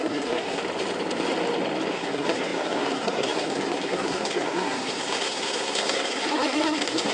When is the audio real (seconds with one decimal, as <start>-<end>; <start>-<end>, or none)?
0.6-1.9